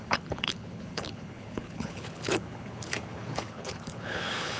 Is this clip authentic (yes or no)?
no